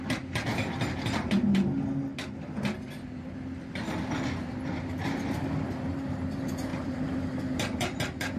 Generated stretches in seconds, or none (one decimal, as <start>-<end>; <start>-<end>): 0.5-1.2; 6.7-8.0